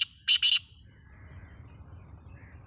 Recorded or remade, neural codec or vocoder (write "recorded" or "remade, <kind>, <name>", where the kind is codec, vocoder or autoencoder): recorded